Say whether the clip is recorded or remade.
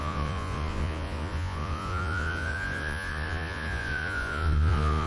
remade